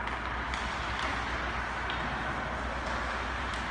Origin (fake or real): real